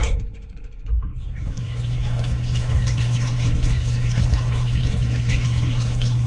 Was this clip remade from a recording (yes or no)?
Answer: yes